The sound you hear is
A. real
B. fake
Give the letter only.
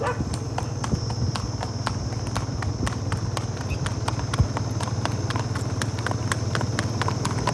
A